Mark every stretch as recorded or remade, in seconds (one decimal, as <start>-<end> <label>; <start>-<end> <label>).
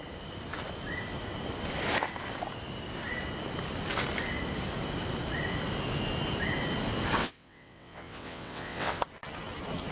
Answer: 0.0-7.2 recorded; 7.2-9.0 remade; 9.0-9.9 recorded